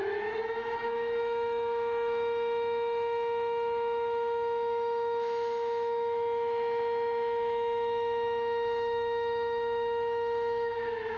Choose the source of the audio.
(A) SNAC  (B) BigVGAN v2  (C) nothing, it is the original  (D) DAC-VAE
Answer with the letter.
D